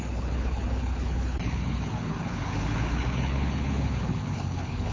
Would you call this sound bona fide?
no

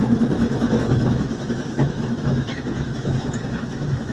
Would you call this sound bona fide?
no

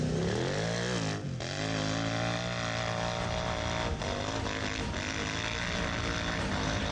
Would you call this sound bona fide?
yes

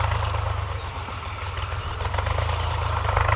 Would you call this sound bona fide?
yes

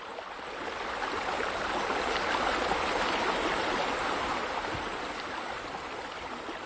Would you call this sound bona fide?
yes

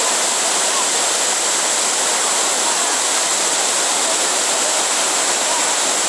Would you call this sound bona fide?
no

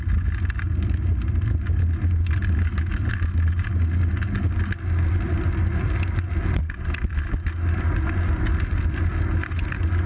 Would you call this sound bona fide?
yes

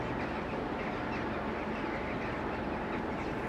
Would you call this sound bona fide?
yes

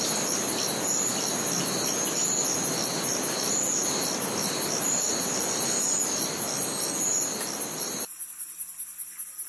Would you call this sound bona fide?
yes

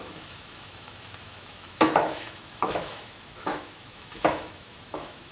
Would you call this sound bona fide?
no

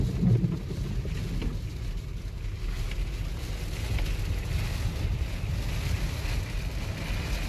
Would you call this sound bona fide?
yes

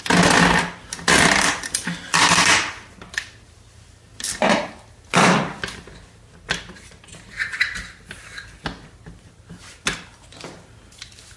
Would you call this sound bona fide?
yes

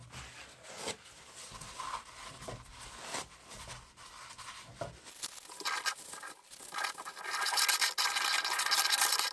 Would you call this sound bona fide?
yes